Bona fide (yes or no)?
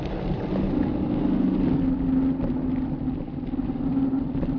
yes